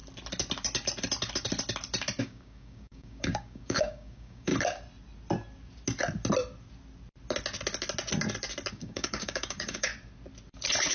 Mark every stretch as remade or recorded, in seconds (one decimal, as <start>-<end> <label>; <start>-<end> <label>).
0.0-2.2 recorded; 2.2-4.5 remade; 4.5-8.7 recorded; 8.7-9.9 remade; 9.9-10.9 recorded